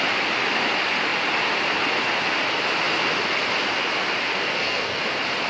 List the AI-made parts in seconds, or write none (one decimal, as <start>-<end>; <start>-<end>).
4.3-5.0